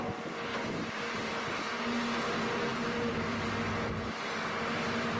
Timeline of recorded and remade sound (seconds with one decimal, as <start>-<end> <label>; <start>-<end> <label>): 0.0-0.5 recorded; 0.5-1.8 remade; 1.8-2.7 recorded; 2.7-3.5 remade; 3.5-5.2 recorded